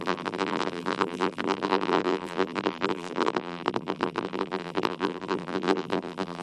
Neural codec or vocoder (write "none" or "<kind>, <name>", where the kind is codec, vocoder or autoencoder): vocoder, BigVGAN v2